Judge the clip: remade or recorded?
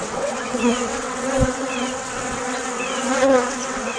remade